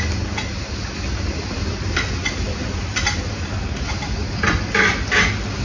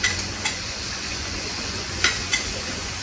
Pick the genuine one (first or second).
first